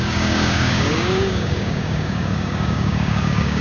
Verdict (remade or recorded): remade